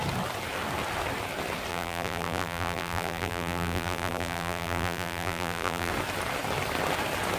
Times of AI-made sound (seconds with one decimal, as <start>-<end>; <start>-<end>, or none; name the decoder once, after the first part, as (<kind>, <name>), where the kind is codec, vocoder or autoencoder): 1.7-5.9 (vocoder, BigVGAN v2)